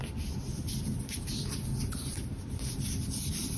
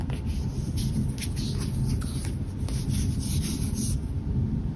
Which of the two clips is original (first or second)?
second